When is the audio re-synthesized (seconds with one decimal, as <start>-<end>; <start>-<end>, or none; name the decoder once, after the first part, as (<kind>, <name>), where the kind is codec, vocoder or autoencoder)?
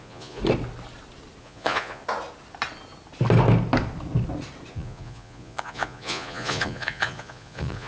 0.0-0.4 (vocoder, Vocos); 1.4-2.0; 4.7-7.9